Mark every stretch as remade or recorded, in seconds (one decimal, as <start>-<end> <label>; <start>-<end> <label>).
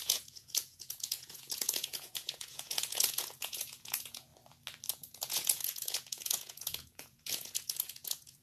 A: 0.0-4.3 remade; 4.3-4.9 recorded; 4.9-8.4 remade